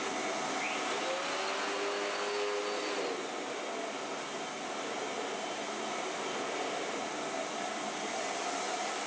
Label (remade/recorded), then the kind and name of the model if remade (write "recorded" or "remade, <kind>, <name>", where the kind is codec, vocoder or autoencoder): recorded